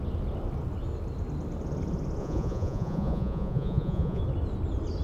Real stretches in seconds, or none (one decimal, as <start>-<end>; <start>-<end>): 0.0-2.2; 4.2-5.0